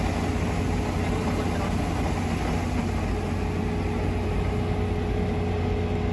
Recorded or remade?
recorded